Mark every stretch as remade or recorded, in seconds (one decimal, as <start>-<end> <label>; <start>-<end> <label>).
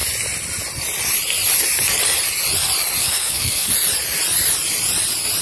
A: 0.0-3.0 recorded; 3.0-3.7 remade; 3.7-5.4 recorded